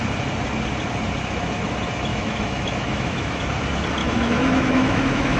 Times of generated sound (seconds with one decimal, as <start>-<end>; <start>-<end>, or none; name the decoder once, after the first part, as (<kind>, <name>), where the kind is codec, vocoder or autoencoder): 2.1-3.4 (autoencoder, DAC-VAE); 4.0-5.4